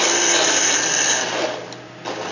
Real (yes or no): yes